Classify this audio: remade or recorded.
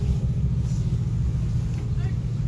recorded